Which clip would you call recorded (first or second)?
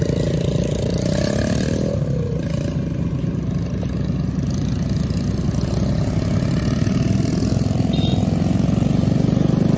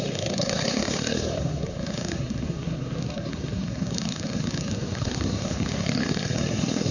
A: first